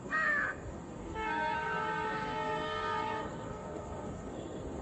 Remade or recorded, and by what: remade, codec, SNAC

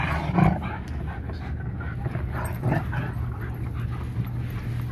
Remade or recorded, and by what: recorded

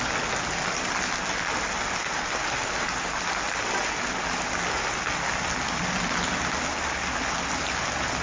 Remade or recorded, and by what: recorded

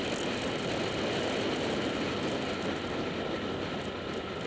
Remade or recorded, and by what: recorded